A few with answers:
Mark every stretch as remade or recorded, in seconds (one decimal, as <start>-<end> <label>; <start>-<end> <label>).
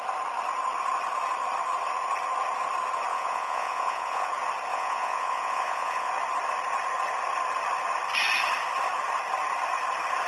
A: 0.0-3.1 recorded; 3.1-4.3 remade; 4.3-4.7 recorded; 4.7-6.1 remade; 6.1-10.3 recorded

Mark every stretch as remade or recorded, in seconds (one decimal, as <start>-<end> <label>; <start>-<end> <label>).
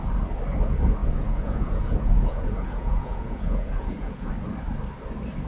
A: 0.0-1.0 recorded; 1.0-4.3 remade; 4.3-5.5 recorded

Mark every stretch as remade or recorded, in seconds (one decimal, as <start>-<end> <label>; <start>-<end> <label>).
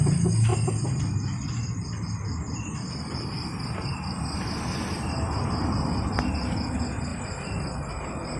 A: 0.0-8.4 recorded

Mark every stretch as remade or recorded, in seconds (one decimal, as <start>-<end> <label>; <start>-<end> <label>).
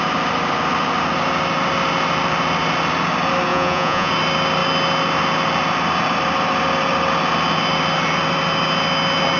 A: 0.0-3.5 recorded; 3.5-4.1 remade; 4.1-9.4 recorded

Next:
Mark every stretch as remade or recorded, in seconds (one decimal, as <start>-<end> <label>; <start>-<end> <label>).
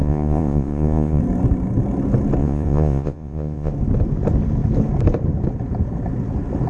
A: 0.0-1.2 remade; 1.2-2.4 recorded; 2.4-3.7 remade; 3.7-6.7 recorded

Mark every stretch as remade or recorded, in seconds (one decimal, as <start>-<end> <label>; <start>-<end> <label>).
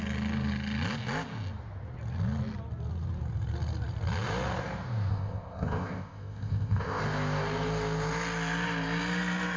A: 0.0-5.1 recorded; 5.1-7.0 remade; 7.0-9.6 recorded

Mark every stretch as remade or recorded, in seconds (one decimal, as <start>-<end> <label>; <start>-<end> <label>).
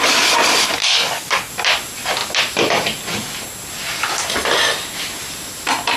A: 0.0-0.7 recorded; 0.7-1.5 remade; 1.5-6.0 recorded